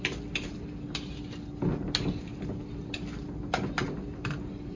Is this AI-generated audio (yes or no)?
no